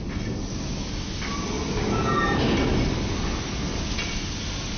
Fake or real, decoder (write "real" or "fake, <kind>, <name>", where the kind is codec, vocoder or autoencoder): real